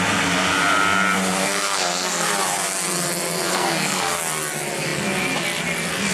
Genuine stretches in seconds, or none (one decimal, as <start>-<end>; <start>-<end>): 0.0-1.4; 2.3-3.5; 4.2-6.1